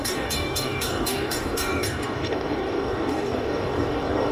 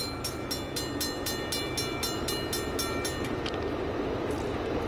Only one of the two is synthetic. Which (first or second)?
first